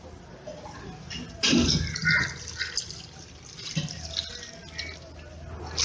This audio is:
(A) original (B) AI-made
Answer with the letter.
A